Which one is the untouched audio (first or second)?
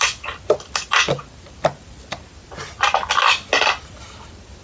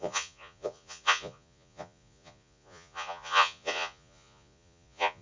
first